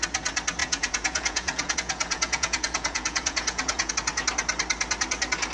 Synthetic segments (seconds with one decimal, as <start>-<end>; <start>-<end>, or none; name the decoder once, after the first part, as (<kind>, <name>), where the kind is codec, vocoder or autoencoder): 0.6-3.9 (vocoder, Vocos)